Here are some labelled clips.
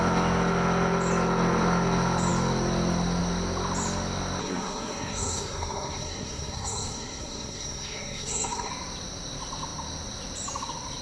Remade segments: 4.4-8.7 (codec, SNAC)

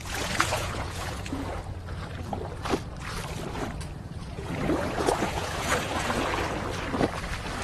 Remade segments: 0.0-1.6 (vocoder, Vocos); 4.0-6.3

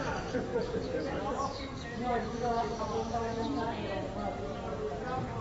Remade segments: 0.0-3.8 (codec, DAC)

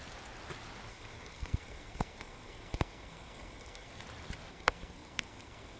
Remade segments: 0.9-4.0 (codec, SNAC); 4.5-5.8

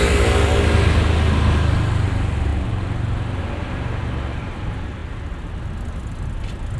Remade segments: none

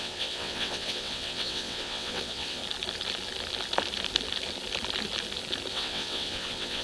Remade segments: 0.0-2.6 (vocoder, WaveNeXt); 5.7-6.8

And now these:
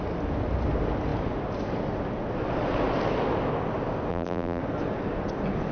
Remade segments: 4.1-4.6 (vocoder, BigVGAN v2)